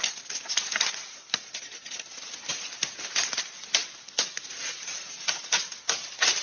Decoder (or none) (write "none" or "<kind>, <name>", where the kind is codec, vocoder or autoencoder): none